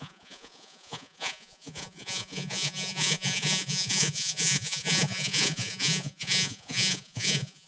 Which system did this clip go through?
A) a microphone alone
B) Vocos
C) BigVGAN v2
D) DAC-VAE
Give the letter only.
B